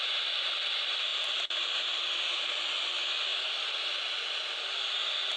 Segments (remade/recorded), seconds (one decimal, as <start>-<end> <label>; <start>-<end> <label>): 0.0-5.4 recorded